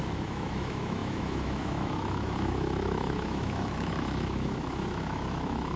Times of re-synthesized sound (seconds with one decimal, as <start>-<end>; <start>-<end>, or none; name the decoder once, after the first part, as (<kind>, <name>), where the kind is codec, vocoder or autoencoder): 0.0-5.8 (autoencoder, DAC-VAE)